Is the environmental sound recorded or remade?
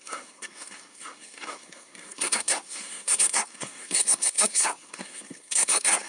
remade